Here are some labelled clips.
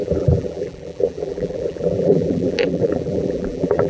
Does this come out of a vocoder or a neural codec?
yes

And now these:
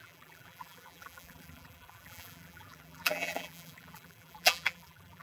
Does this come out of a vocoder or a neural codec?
yes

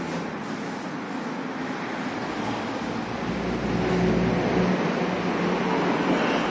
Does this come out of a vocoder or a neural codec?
no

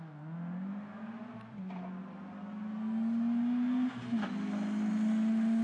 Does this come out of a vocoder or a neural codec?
no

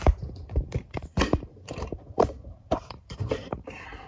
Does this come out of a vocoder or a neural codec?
yes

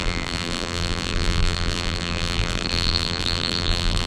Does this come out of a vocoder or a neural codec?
yes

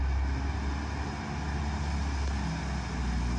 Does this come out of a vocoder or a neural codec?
no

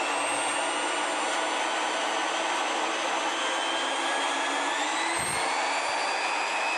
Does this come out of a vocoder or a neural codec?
no